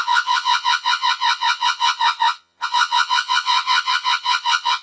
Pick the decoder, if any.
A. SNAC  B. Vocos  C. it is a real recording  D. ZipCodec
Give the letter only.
B